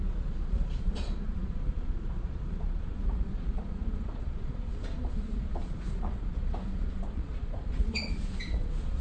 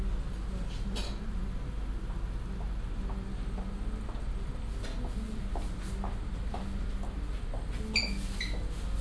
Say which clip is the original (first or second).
second